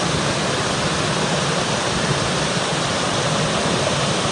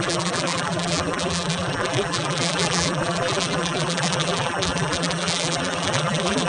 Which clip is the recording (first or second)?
first